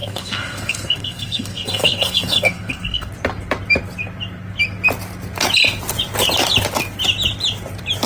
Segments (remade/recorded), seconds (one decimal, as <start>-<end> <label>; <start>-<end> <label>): 0.0-3.1 remade; 3.1-8.1 recorded

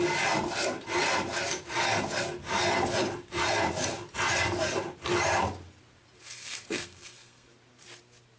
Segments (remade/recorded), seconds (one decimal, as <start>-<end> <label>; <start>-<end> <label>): 0.0-6.2 recorded; 6.2-7.5 remade; 7.5-8.4 recorded

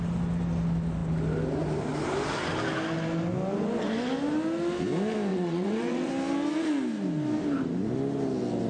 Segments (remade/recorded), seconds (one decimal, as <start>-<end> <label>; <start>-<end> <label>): 0.0-5.3 recorded; 5.3-6.1 remade; 6.1-8.7 recorded

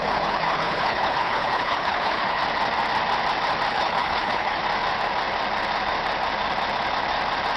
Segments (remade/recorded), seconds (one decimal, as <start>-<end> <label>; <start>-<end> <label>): 0.0-2.4 remade; 2.4-3.7 recorded; 3.7-4.6 remade; 4.6-7.6 recorded

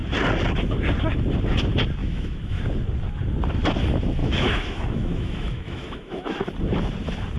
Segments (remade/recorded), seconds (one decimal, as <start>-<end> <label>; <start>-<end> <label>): 0.0-2.0 recorded; 2.0-2.6 remade; 2.6-4.2 recorded; 4.2-6.4 remade; 6.4-7.4 recorded

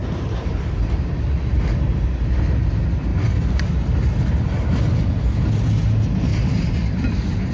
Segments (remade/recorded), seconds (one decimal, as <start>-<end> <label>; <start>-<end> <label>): 0.0-1.8 remade; 1.8-3.1 recorded; 3.1-4.8 remade; 4.8-6.3 recorded; 6.3-7.5 remade

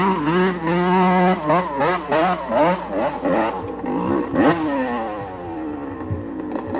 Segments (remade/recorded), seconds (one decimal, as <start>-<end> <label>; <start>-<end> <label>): 0.0-6.8 recorded

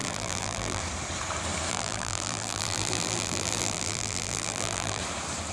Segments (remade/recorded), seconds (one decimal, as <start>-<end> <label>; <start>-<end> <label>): 0.0-0.8 remade; 0.8-1.7 recorded; 1.7-5.0 remade; 5.0-5.5 recorded